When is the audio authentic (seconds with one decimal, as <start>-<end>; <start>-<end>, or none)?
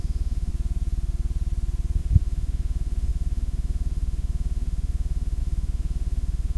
0.5-2.0